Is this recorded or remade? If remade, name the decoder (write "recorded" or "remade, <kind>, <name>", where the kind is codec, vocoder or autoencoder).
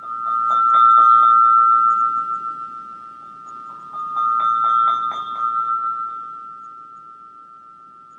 recorded